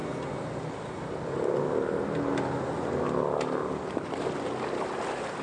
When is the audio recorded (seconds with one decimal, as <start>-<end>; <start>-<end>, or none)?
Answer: 0.0-5.4